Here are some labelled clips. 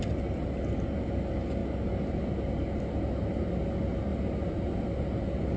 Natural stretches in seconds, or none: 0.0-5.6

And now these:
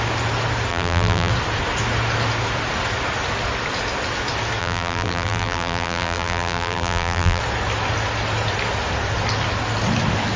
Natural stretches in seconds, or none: 0.0-0.7; 1.3-4.6; 7.4-10.4

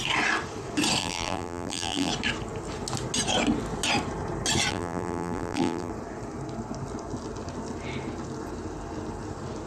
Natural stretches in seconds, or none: 0.0-1.0; 2.1-4.7; 5.9-9.7

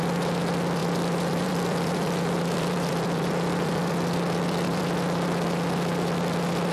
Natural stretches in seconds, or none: 0.0-0.8; 4.8-6.7

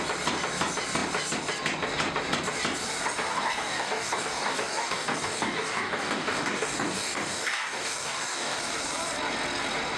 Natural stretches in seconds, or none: 0.0-3.3; 8.6-10.0